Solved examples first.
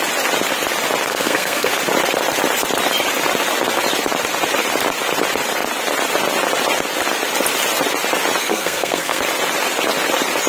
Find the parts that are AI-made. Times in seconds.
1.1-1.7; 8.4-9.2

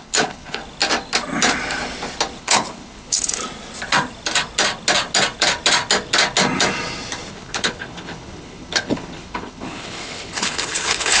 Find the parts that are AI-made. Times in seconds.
0.0-0.6; 2.4-3.4; 7.3-11.2

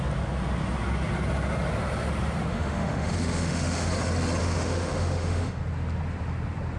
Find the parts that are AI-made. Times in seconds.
2.5-3.9; 4.4-5.6